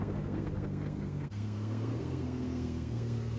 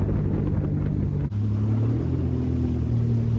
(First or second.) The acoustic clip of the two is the second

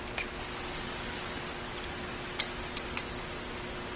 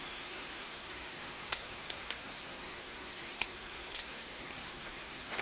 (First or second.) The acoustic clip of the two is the first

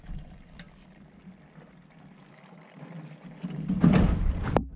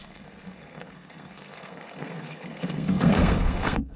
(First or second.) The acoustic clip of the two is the first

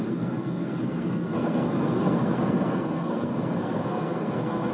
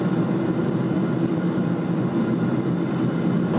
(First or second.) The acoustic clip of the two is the second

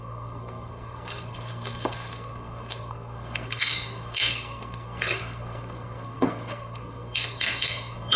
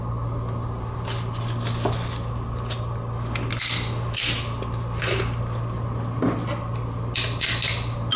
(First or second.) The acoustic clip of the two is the second